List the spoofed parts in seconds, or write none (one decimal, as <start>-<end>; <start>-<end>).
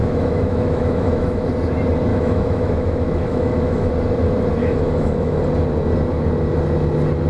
0.0-1.5; 2.1-3.9; 4.6-5.4